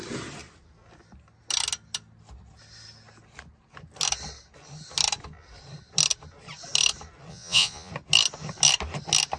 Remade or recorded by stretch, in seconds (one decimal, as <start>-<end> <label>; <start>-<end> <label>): 0.0-7.3 recorded; 7.3-7.9 remade; 7.9-9.4 recorded